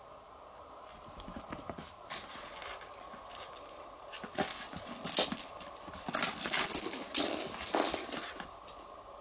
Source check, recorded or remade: recorded